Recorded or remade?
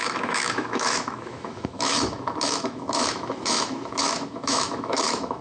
remade